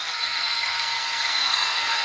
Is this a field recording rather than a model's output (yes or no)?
no